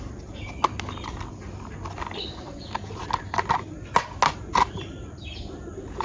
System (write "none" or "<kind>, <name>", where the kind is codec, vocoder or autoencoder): none